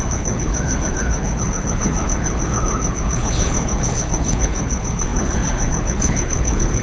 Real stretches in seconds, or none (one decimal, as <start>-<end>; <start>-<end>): none